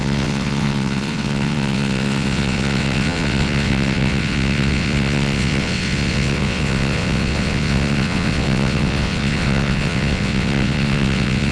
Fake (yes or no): yes